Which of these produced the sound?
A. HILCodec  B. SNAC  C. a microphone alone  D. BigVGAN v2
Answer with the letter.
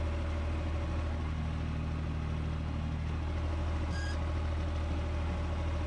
C